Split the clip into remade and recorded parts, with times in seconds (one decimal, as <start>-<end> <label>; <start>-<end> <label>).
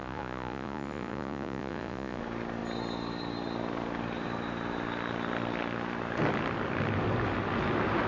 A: 0.0-2.2 remade; 2.2-8.1 recorded